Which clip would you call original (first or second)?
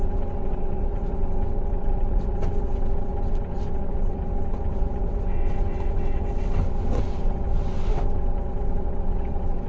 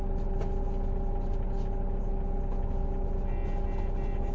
second